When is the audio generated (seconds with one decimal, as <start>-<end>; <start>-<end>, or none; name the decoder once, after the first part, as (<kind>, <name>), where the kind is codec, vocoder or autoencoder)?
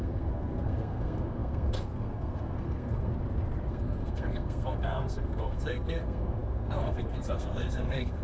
0.0-3.1 (codec, SNAC); 3.7-8.2